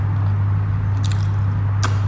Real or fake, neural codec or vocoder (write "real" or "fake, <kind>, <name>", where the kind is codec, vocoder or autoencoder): real